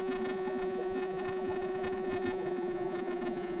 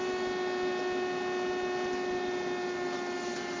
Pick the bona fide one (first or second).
second